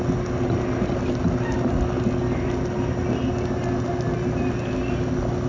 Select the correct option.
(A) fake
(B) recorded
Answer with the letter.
B